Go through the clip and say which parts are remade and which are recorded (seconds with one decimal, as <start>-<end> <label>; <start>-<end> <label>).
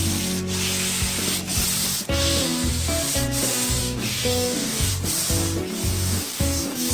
0.0-3.8 recorded; 3.8-4.9 remade; 4.9-5.9 recorded; 5.9-6.9 remade